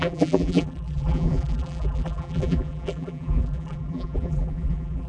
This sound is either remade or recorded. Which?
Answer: remade